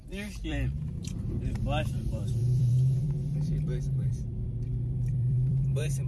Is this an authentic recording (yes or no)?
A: no